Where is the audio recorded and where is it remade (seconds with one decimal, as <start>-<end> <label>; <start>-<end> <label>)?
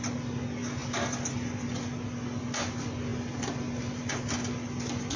0.0-5.2 recorded